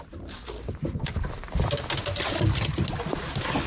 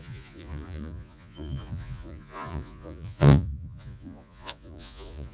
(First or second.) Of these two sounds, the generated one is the second